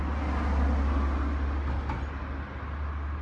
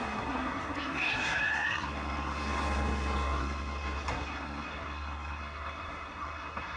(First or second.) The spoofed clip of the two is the second